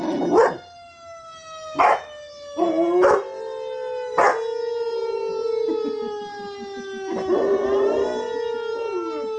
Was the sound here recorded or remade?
recorded